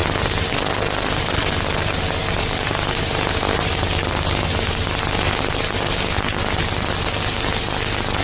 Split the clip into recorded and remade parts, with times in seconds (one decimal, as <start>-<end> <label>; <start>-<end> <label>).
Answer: 0.0-0.5 remade; 0.5-2.4 recorded; 2.4-5.4 remade; 5.4-8.2 recorded